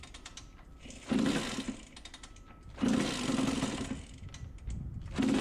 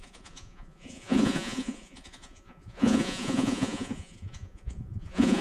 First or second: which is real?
first